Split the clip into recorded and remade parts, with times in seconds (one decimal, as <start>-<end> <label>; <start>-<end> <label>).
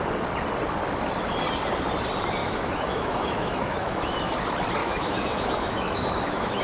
0.0-2.4 recorded; 2.4-4.3 remade; 4.3-4.8 recorded; 4.8-6.6 remade